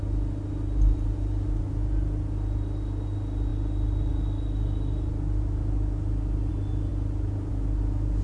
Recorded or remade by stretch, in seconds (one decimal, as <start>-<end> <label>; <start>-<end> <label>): 0.0-8.2 recorded